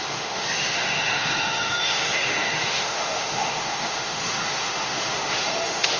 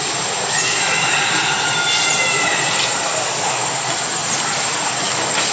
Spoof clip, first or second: first